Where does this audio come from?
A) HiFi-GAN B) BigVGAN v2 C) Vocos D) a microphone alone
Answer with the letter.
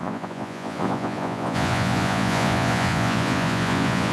C